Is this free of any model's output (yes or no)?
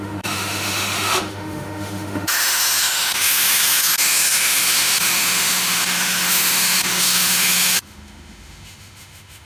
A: no